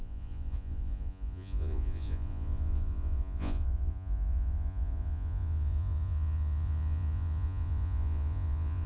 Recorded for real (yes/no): no